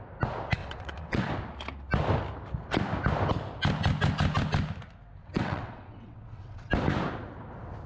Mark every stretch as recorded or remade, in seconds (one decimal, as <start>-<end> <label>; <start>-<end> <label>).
0.0-0.6 recorded; 0.6-1.3 remade; 1.3-5.2 recorded; 5.2-6.7 remade; 6.7-7.9 recorded